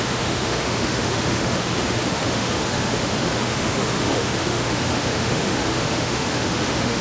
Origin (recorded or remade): remade